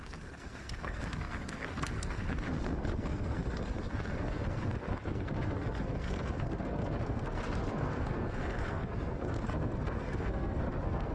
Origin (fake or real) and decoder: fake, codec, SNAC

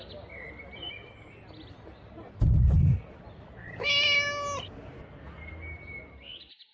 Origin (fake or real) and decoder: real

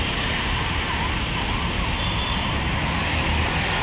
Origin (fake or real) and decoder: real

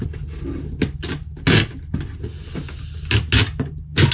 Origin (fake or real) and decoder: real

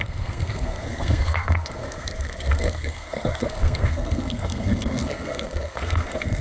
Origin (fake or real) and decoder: fake, codec, SNAC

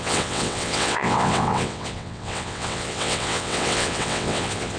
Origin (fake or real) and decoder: fake, vocoder, WaveNeXt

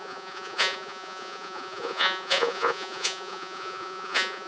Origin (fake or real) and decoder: fake, vocoder, Vocos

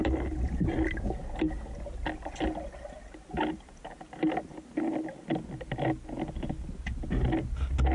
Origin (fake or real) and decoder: real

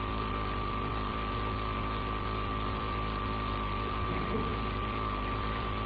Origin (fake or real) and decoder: fake, vocoder, BigVGAN v2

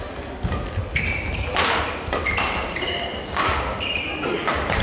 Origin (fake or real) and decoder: real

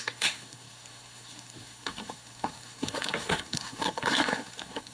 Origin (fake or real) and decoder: fake, codec, SNAC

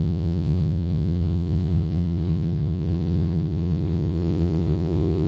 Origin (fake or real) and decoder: fake, vocoder, Vocos